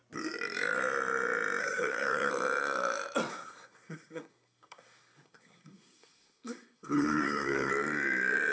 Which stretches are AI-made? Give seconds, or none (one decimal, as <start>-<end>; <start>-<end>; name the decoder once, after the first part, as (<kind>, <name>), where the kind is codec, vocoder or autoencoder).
1.6-2.3 (codec, SNAC); 3.3-7.7

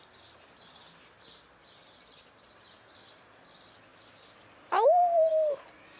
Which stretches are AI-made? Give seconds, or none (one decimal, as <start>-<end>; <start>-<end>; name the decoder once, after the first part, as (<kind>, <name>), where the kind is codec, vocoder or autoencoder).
none

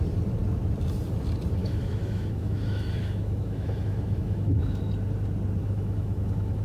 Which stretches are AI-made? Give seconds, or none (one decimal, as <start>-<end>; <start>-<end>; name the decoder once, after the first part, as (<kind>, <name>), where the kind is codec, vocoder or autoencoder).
1.6-4.9 (autoencoder, DAC-VAE); 5.6-6.6